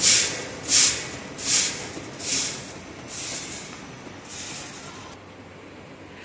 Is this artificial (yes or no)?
no